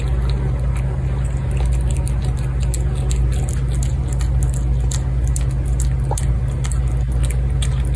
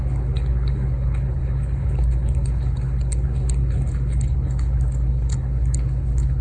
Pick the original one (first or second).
first